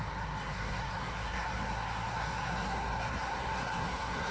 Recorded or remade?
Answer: remade